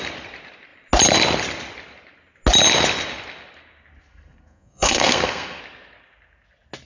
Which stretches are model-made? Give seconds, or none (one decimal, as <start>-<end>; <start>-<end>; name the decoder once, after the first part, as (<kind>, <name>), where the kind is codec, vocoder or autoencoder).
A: 4.1-5.6 (codec, SNAC)